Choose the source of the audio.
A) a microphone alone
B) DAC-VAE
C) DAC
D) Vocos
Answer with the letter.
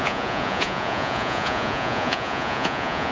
D